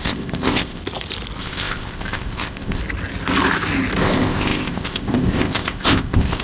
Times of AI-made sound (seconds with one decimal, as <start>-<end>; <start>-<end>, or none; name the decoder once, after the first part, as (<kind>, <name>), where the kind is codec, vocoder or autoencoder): 0.0-0.8 (codec, ZipCodec); 1.4-2.8; 4.0-6.4